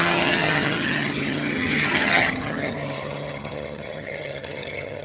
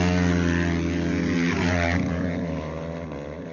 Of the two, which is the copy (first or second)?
first